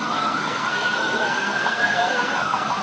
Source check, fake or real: fake